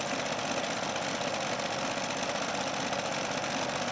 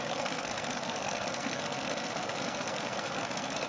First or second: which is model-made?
second